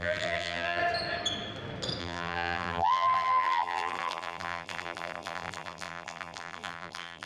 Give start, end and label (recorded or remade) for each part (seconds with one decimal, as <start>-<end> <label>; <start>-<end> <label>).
0.0-0.8 remade; 0.8-2.0 recorded; 2.0-7.3 remade